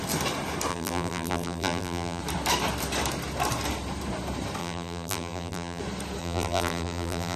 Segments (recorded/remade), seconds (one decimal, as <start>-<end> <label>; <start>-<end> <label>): 0.0-0.7 recorded; 0.7-2.2 remade; 2.2-4.6 recorded; 4.6-5.8 remade; 5.8-6.2 recorded; 6.2-7.4 remade